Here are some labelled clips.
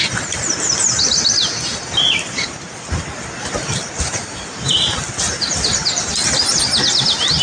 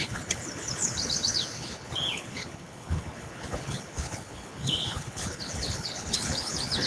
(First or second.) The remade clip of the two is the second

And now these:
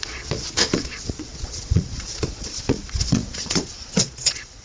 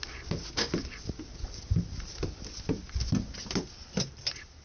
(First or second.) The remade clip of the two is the first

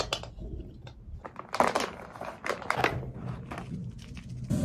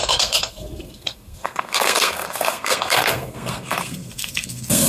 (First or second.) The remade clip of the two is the second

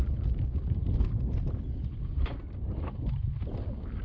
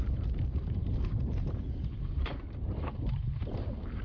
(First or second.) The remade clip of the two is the second